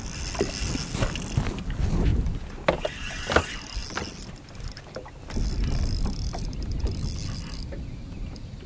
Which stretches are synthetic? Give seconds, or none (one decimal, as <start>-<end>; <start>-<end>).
2.1-3.0; 7.6-8.7

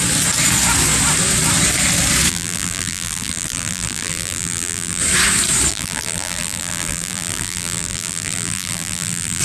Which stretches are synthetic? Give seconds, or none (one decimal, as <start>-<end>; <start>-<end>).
2.3-5.0; 5.7-9.4